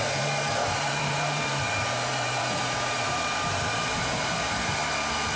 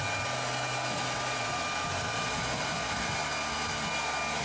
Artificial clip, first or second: first